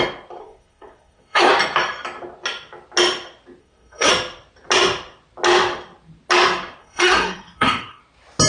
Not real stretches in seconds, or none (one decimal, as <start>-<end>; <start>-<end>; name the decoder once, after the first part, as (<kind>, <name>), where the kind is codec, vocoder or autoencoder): 0.4-1.5 (codec, SNAC); 3.6-4.1; 6.8-8.0